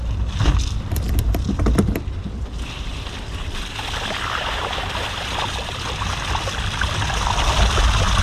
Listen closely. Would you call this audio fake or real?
fake